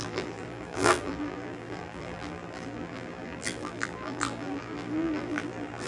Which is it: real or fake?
fake